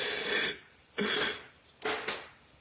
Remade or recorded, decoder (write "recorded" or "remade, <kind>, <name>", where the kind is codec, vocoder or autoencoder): recorded